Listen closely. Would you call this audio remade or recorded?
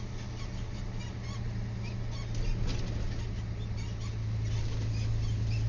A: recorded